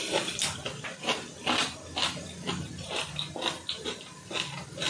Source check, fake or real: real